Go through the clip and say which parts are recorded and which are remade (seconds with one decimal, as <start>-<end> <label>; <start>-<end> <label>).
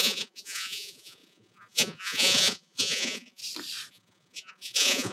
0.0-3.4 remade; 3.4-3.9 recorded; 3.9-5.1 remade